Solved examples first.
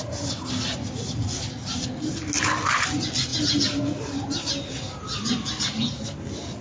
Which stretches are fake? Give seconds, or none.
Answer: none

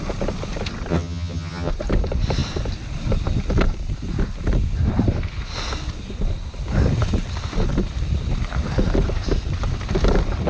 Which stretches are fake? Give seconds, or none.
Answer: 0.9-1.7 (vocoder, HiFi-GAN)

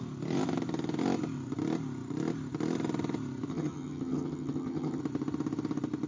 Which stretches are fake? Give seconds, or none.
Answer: 3.5-5.0 (vocoder, HiFi-GAN)